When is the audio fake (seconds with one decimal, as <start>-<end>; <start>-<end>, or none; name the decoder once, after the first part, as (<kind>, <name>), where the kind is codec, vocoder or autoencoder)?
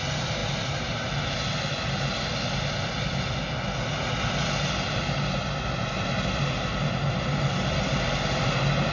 none